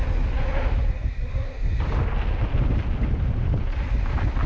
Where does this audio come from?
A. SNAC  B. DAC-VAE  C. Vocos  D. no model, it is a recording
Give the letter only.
D